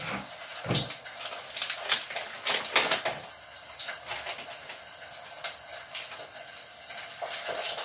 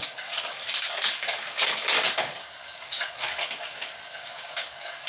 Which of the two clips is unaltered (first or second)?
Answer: first